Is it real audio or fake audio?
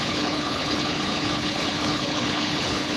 fake